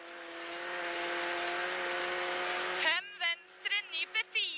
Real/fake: real